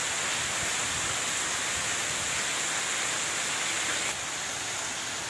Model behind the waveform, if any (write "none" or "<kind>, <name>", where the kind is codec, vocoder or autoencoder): none